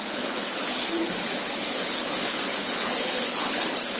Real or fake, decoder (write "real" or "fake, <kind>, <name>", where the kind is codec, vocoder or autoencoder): fake, codec, HILCodec